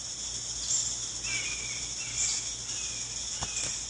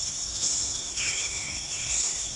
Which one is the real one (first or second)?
first